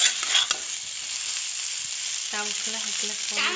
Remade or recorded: recorded